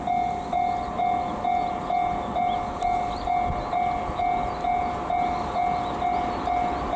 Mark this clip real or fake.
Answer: real